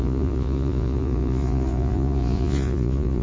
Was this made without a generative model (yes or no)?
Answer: no